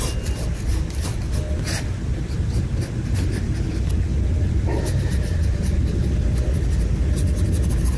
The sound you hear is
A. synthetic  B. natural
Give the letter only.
B